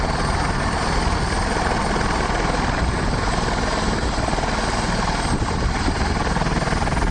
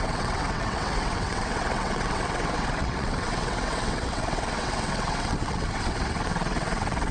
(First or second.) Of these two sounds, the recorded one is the first